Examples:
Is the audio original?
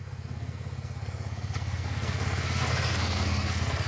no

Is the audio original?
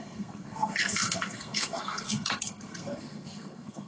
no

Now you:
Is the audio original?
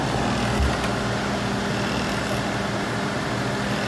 yes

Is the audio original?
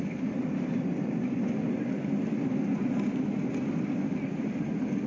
yes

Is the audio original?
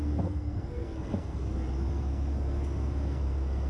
no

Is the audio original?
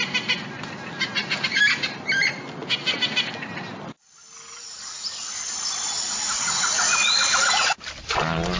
yes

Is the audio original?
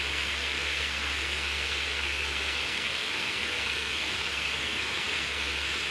no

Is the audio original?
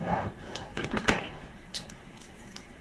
no